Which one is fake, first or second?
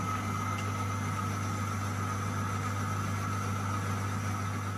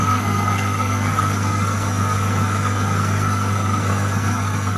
second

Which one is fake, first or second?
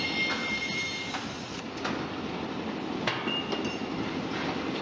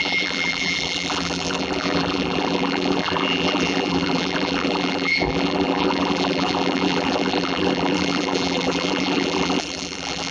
second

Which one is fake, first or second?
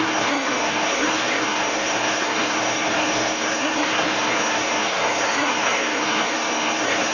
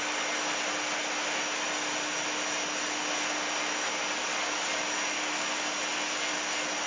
first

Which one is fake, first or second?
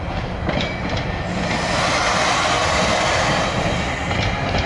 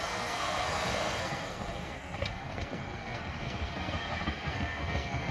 second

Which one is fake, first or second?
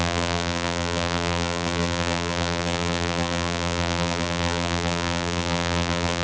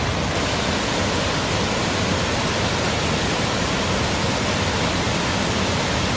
first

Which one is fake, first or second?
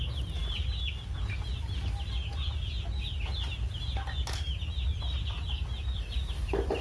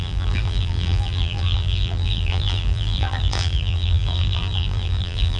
second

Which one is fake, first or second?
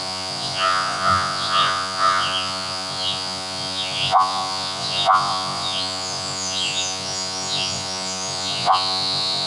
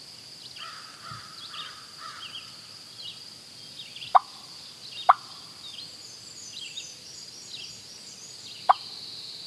first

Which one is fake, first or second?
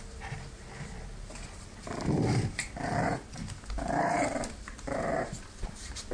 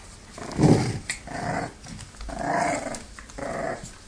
first